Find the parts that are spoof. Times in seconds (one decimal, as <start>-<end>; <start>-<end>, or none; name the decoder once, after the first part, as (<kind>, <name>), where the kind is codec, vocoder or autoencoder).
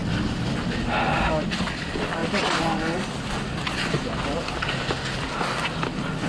none